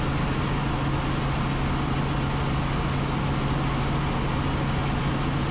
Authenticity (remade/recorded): recorded